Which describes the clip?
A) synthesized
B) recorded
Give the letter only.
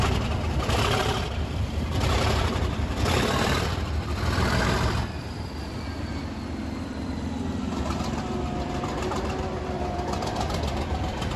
A